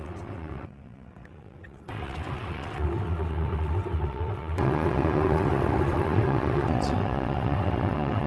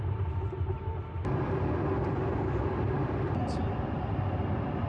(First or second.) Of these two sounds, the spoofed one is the first